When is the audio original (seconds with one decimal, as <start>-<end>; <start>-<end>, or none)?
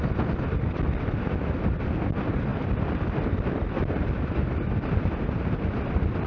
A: 0.0-2.5; 4.7-6.3